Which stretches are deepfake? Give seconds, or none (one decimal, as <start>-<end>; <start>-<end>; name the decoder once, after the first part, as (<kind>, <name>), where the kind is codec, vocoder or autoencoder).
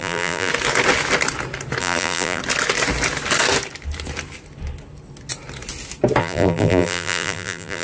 0.0-0.5 (vocoder, BigVGAN v2); 1.8-2.4; 6.2-7.8